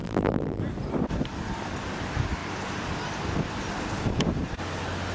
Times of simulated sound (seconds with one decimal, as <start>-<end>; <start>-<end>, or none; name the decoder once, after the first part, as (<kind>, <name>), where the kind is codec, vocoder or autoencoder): 0.0-0.6 (vocoder, BigVGAN v2)